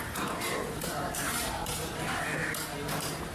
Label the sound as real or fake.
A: real